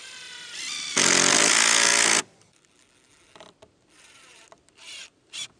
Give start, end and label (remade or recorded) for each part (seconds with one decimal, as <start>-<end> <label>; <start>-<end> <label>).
0.0-5.6 recorded